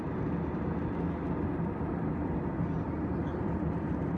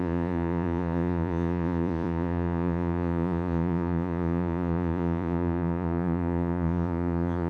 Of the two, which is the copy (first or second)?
second